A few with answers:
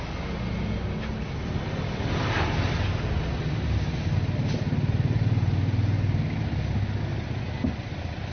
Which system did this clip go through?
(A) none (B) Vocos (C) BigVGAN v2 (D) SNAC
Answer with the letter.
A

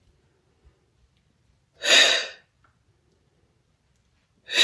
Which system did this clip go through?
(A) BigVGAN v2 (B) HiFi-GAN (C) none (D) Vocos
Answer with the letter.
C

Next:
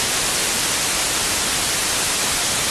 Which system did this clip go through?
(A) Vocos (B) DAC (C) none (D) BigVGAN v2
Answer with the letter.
C